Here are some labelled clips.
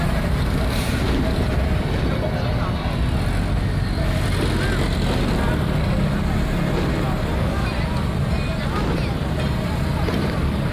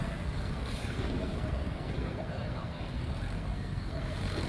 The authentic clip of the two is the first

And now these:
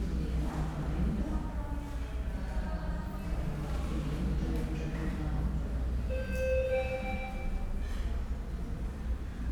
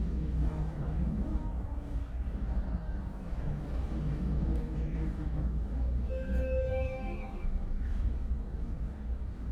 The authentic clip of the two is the first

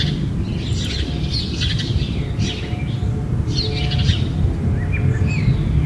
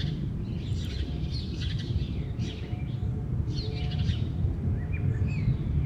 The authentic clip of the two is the first